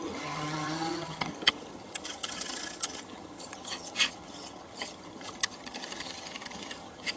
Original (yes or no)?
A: no